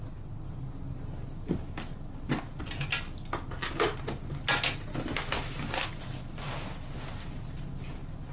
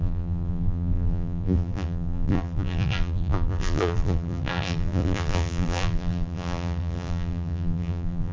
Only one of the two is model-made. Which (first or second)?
second